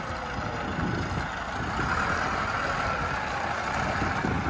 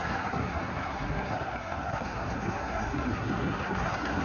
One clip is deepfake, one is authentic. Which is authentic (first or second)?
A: first